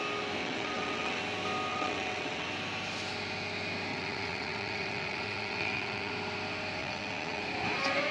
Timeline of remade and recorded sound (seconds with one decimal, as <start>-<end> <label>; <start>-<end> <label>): 0.0-0.4 recorded; 0.4-1.2 remade; 1.2-1.7 recorded; 1.7-2.5 remade; 2.5-3.9 recorded; 3.9-6.1 remade; 6.1-6.8 recorded; 6.8-7.4 remade; 7.4-8.1 recorded